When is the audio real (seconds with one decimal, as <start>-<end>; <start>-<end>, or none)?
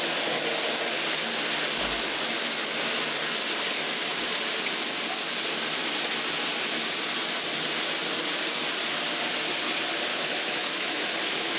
0.0-10.1